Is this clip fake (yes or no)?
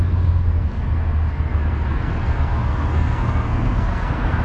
yes